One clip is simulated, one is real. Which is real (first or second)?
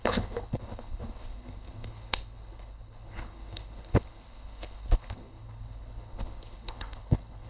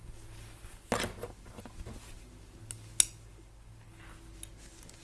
second